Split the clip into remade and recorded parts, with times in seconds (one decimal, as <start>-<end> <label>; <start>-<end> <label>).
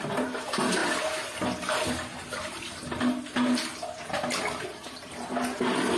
0.0-6.0 recorded